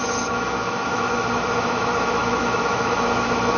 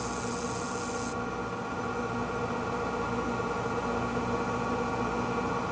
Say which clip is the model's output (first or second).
first